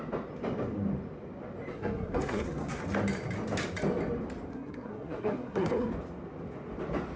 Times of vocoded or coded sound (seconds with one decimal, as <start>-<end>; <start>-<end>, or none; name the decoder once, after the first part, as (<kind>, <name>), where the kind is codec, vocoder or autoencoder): 1.7-2.8 (codec, SNAC); 4.5-5.9